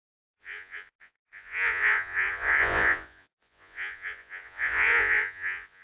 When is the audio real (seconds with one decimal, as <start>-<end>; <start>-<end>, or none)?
none